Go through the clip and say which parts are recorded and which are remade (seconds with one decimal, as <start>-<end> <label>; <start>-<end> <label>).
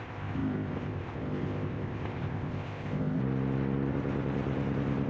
0.0-3.2 remade; 3.2-5.1 recorded